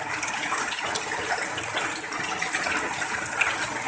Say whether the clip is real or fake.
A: real